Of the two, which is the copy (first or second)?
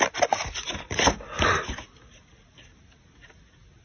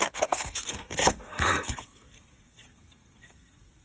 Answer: second